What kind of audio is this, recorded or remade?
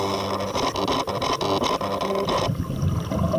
recorded